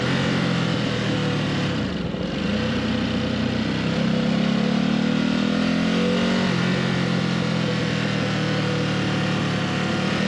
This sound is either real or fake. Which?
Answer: real